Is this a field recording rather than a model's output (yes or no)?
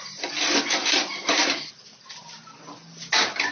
yes